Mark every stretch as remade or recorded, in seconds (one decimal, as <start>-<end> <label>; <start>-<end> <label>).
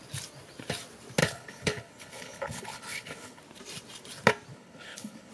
0.0-1.2 recorded; 1.2-3.4 remade; 3.4-4.5 recorded; 4.5-5.3 remade